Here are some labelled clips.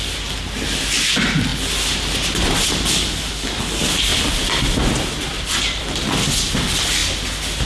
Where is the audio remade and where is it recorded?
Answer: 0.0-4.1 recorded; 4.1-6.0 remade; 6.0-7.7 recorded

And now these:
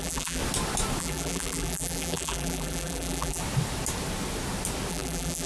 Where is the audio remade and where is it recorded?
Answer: 0.0-0.4 remade; 0.4-1.0 recorded; 1.0-3.4 remade; 3.4-4.9 recorded; 4.9-5.5 remade

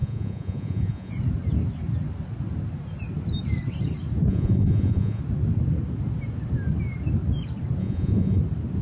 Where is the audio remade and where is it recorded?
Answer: 0.0-1.1 remade; 1.1-4.3 recorded; 4.3-5.2 remade; 5.2-7.8 recorded; 7.8-8.4 remade; 8.4-8.8 recorded